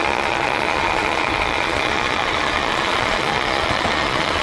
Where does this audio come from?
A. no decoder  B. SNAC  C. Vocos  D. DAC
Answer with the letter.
C